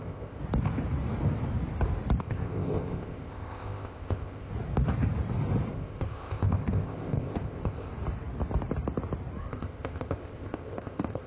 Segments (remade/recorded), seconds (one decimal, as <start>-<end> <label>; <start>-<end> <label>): 0.0-0.4 remade; 0.4-2.2 recorded; 2.2-4.5 remade; 4.5-5.7 recorded; 5.7-7.9 remade; 7.9-9.4 recorded; 9.4-11.3 remade